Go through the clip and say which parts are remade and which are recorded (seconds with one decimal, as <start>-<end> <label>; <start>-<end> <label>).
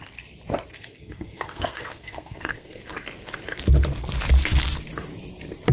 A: 0.0-0.7 recorded; 0.7-2.8 remade; 2.8-5.7 recorded